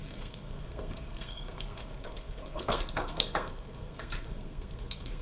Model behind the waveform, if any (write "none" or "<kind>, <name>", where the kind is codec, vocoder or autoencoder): codec, SNAC